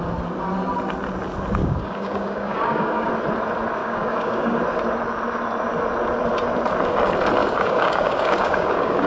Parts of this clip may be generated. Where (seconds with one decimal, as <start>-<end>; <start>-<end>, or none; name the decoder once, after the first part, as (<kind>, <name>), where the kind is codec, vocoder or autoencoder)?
1.6-3.1 (codec, DAC); 3.8-4.6; 7.4-9.1